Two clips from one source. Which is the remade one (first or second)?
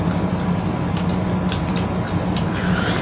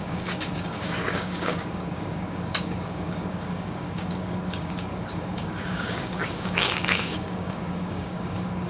second